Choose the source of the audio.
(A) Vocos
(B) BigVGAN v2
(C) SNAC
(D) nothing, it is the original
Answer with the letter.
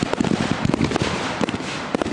D